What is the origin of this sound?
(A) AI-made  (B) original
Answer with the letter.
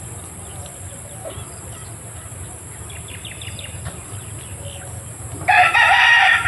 B